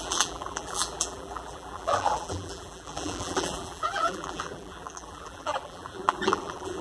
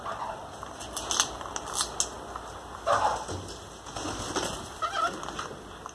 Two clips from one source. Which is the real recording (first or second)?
second